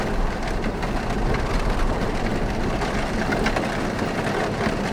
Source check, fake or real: real